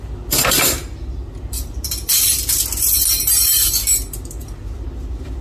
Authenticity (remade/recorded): recorded